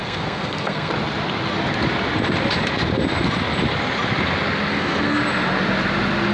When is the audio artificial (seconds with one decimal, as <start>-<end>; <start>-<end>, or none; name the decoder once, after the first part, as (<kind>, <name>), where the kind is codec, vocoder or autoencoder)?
0.0-0.9 (codec, SNAC); 4.7-5.2